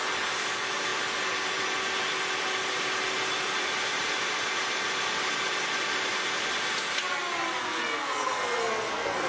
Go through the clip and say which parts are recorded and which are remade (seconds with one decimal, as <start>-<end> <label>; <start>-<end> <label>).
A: 0.0-7.6 recorded; 7.6-9.3 remade